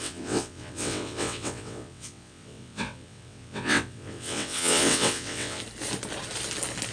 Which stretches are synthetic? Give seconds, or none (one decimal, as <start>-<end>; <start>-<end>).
0.0-5.6